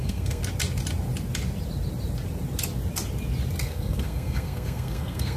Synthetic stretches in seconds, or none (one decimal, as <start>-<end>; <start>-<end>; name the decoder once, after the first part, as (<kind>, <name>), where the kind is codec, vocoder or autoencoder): 0.0-0.4 (codec, SNAC); 3.6-5.4